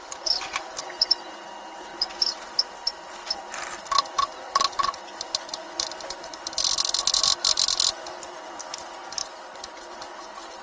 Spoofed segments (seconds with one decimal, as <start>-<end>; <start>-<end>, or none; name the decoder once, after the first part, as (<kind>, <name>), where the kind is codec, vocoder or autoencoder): 9.2-9.9 (vocoder, BigVGAN v2)